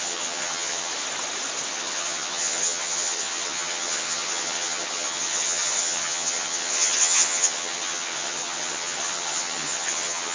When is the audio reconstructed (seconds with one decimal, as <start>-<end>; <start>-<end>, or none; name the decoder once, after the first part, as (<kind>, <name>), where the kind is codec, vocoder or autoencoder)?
0.0-0.9 (vocoder, HiFi-GAN); 1.7-10.3